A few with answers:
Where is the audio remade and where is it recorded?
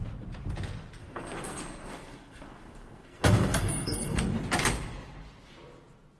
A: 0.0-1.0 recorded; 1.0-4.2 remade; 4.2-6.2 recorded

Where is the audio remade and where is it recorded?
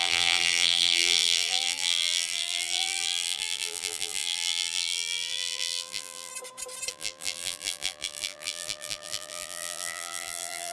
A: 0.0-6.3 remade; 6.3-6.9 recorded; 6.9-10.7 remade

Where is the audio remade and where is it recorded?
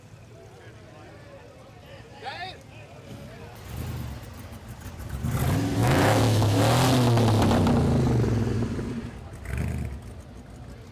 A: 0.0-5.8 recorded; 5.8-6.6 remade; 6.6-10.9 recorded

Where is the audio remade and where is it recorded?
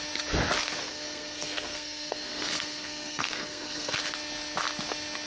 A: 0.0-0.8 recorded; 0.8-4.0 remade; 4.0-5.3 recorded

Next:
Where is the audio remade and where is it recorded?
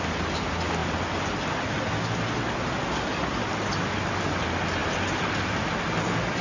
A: 0.0-6.4 recorded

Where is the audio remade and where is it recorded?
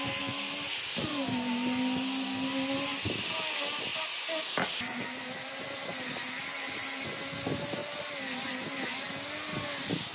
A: 0.0-10.1 recorded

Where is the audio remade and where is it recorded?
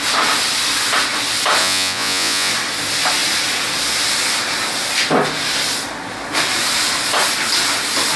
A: 0.0-1.6 recorded; 1.6-2.5 remade; 2.5-8.2 recorded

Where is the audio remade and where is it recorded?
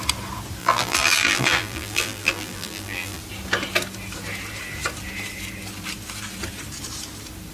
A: 0.0-0.6 recorded; 0.6-3.2 remade; 3.2-7.5 recorded